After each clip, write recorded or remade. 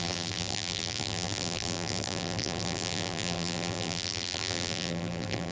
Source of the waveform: remade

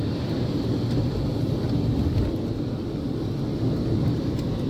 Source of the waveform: recorded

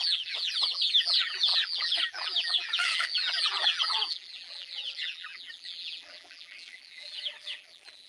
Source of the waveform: remade